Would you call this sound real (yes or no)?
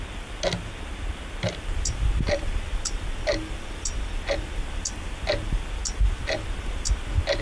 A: yes